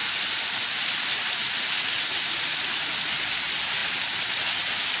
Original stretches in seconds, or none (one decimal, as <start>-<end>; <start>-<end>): 0.0-3.8; 4.3-5.0